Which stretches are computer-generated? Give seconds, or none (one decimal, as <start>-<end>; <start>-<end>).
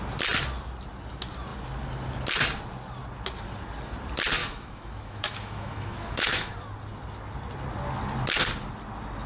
4.4-6.5